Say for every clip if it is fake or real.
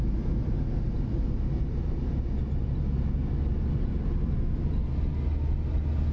real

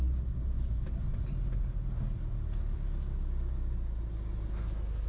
real